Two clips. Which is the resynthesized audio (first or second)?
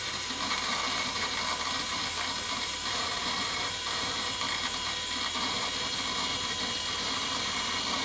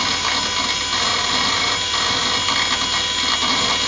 first